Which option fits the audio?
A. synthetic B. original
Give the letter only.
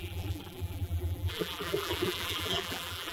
A